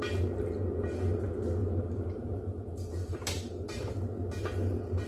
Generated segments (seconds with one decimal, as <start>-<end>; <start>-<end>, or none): 1.6-3.9